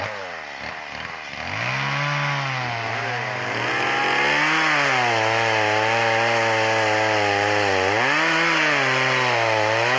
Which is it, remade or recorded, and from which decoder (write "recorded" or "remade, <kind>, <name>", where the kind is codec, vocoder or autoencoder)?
recorded